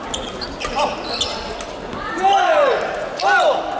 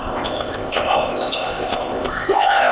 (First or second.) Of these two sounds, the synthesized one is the second